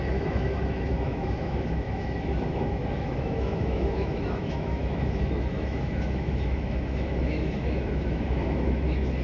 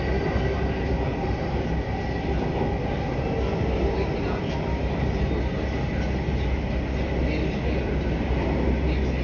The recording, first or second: second